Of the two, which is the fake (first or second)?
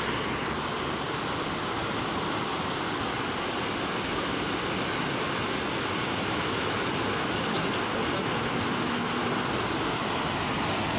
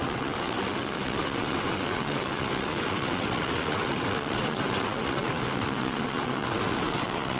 second